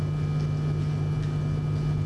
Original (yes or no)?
yes